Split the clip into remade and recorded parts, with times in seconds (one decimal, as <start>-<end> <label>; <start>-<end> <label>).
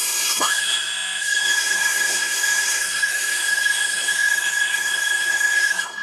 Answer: 0.0-6.0 remade